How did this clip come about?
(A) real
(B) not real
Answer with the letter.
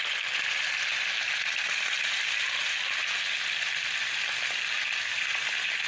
A